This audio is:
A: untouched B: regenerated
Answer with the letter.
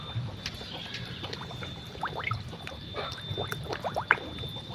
B